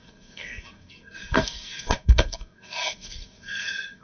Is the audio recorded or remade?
remade